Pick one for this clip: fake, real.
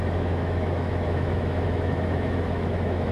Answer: fake